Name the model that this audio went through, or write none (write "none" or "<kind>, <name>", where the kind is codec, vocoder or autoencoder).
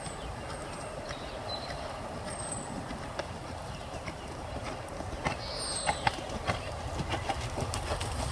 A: none